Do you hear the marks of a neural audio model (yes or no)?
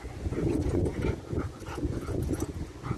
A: yes